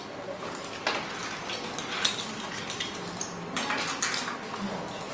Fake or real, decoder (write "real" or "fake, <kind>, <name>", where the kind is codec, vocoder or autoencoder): real